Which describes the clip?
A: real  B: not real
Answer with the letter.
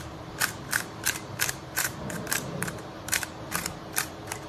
B